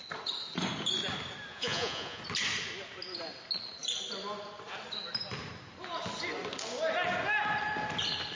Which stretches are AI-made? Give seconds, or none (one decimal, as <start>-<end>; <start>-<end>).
1.5-2.2